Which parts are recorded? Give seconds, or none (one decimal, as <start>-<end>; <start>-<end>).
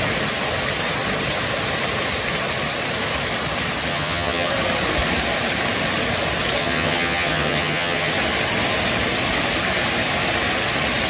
0.0-3.9; 4.5-6.6; 8.1-11.1